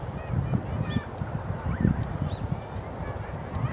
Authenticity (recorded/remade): recorded